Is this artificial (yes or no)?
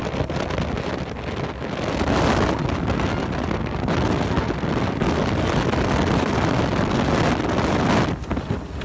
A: no